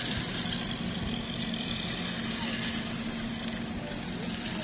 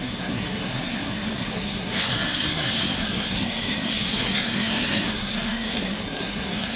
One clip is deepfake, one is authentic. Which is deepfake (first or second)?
second